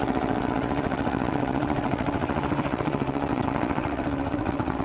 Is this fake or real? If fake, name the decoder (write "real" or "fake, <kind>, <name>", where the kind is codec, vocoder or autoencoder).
fake, vocoder, WaveNeXt